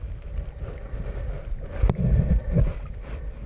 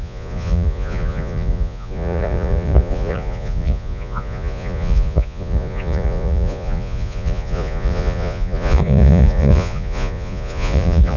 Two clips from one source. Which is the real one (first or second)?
first